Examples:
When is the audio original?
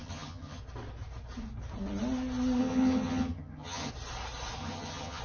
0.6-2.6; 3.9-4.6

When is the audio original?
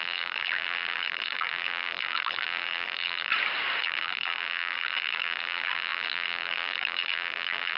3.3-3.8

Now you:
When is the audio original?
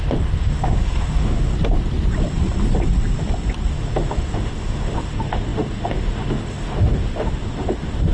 1.5-3.7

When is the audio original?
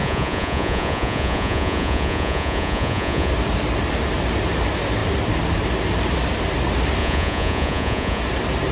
3.3-7.0; 8.2-8.7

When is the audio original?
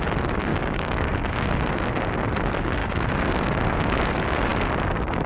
0.0-0.5; 1.5-2.8; 4.1-5.3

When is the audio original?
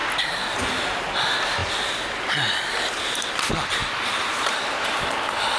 0.0-5.6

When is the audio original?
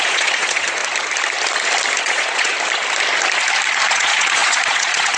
0.8-2.0; 2.5-3.9